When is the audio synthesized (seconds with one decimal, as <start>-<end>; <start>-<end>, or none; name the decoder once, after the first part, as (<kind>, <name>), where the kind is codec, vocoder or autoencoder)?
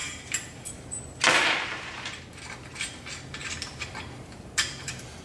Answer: 0.0-2.2 (vocoder, BigVGAN v2); 3.4-5.2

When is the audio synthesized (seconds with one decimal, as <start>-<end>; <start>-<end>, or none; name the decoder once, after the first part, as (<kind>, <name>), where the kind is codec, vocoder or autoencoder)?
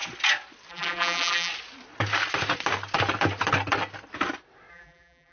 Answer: 0.7-1.5 (vocoder, BigVGAN v2); 4.7-5.3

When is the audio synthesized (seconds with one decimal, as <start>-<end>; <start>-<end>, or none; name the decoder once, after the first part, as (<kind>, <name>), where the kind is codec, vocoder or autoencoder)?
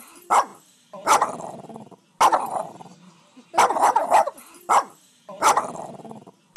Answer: none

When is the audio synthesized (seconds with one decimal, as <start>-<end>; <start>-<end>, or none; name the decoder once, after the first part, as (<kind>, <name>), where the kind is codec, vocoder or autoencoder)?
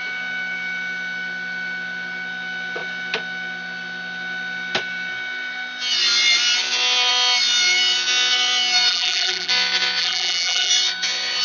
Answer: 8.9-9.5 (vocoder, BigVGAN v2); 10.0-10.7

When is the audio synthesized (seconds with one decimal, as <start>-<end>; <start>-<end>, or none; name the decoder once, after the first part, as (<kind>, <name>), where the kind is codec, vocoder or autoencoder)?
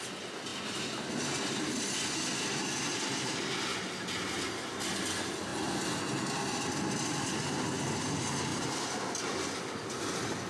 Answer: 8.5-9.0 (vocoder, BigVGAN v2)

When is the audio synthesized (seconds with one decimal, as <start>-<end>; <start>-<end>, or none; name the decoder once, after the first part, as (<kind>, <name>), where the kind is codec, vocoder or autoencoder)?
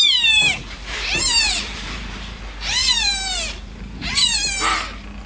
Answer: 0.4-2.4 (vocoder, BigVGAN v2); 2.8-4.1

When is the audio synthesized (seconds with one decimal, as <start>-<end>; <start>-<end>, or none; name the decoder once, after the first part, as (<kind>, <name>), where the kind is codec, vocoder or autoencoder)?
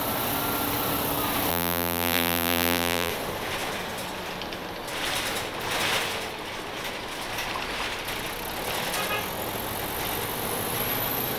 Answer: 1.5-3.1 (vocoder, BigVGAN v2)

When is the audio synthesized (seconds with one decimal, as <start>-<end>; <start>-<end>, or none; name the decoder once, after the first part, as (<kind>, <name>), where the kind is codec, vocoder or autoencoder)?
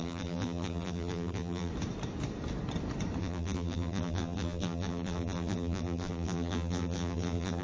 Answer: 0.0-1.7 (vocoder, BigVGAN v2); 3.2-7.6